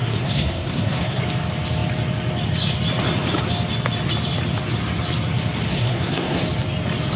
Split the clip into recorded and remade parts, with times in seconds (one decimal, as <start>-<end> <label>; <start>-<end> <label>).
0.0-1.2 remade; 1.2-5.7 recorded; 5.7-6.4 remade; 6.4-7.2 recorded